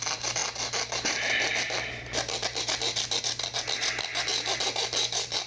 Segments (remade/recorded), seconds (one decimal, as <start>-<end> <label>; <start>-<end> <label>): 0.0-5.5 recorded

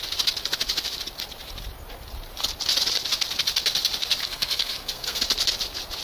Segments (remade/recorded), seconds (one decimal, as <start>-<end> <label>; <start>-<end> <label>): 0.0-4.2 recorded; 4.2-5.2 remade; 5.2-6.0 recorded